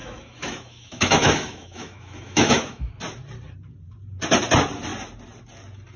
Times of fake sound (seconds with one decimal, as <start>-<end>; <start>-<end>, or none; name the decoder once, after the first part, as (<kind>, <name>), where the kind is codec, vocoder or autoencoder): 0.0-2.9 (autoencoder, DAC-VAE)